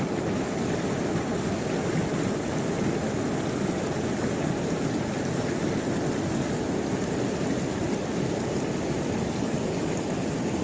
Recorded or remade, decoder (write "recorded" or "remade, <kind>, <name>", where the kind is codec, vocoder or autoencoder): recorded